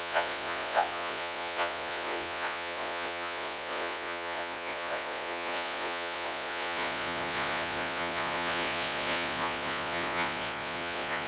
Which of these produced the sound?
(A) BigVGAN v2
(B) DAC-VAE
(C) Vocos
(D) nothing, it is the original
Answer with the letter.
C